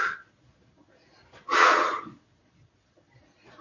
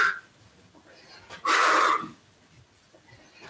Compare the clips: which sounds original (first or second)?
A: second